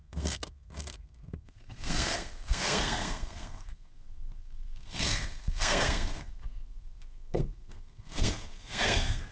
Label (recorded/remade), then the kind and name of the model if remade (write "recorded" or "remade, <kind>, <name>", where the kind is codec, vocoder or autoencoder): remade, codec, SNAC